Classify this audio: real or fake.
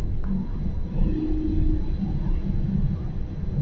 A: real